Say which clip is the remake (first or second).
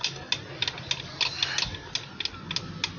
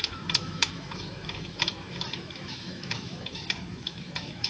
second